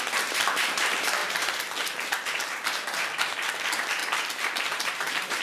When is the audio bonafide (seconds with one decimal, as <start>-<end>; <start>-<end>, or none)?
4.0-4.7